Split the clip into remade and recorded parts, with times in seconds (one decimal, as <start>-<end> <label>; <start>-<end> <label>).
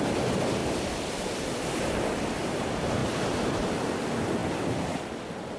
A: 0.0-5.6 recorded